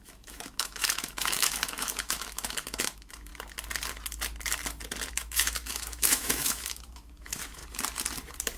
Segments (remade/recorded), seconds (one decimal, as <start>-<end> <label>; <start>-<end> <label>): 0.0-3.3 remade; 3.3-5.1 recorded; 5.1-7.6 remade; 7.6-8.6 recorded